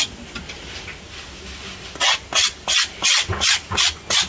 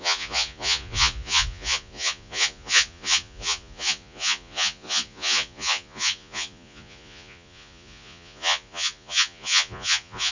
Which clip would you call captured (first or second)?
first